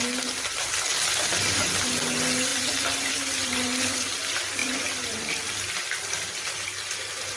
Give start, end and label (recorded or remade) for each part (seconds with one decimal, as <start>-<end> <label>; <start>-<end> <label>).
0.0-4.6 recorded; 4.6-5.3 remade; 5.3-7.4 recorded